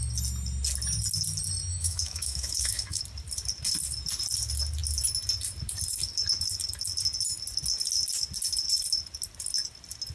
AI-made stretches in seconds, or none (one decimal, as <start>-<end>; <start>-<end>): 1.7-3.0